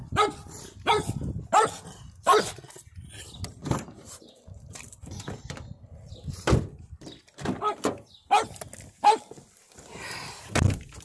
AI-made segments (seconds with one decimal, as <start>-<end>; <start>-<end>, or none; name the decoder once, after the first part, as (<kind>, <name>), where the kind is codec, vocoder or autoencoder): 3.6-6.6 (vocoder, BigVGAN v2)

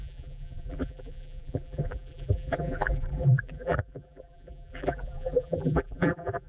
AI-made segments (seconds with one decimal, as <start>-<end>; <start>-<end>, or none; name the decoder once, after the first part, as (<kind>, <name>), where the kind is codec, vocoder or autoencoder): 0.0-6.5 (vocoder, BigVGAN v2)

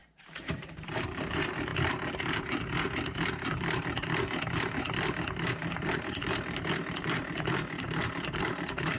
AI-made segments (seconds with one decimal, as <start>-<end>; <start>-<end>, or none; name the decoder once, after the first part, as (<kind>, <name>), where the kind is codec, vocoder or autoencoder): 0.0-1.7 (vocoder, BigVGAN v2); 3.5-9.0

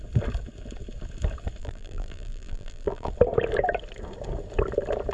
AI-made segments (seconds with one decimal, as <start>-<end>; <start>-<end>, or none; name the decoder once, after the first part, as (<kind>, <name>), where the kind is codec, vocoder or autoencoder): 1.6-3.1 (vocoder, BigVGAN v2)

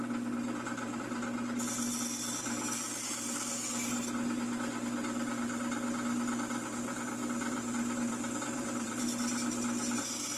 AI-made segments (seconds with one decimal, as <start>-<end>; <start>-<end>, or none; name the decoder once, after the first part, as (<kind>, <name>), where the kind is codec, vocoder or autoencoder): 6.9-9.0 (vocoder, BigVGAN v2)

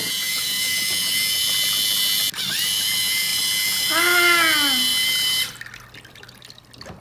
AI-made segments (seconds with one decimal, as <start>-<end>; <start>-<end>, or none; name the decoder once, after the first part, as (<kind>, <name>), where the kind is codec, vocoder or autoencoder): none

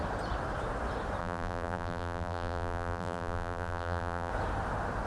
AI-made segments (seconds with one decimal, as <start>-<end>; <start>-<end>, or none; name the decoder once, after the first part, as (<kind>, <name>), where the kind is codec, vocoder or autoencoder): 1.2-4.3 (vocoder, BigVGAN v2)

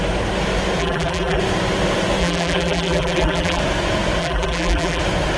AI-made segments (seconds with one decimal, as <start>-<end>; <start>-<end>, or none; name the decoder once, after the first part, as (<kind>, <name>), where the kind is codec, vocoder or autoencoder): 0.8-1.4 (vocoder, BigVGAN v2); 2.2-3.6; 4.2-5.0